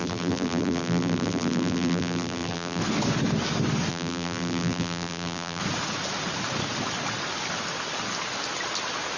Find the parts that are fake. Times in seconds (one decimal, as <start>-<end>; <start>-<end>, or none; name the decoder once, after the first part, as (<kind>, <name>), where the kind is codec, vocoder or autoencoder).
0.0-2.8 (vocoder, BigVGAN v2); 3.9-5.6